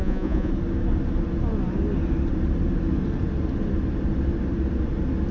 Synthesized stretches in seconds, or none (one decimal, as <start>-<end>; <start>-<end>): 0.0-0.5